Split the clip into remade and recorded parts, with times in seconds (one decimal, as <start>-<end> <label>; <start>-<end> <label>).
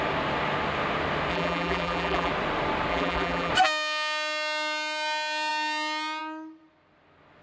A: 0.0-1.3 recorded; 1.3-2.3 remade; 2.3-2.9 recorded; 2.9-3.5 remade; 3.5-7.4 recorded